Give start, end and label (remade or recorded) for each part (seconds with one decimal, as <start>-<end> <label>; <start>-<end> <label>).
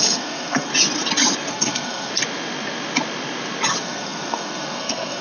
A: 0.0-0.7 remade; 0.7-1.5 recorded; 1.5-2.1 remade; 2.1-3.8 recorded; 3.8-5.2 remade